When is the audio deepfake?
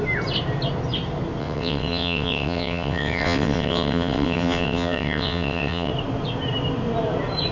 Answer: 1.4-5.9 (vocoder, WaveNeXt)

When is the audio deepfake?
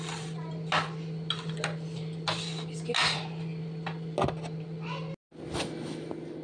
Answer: none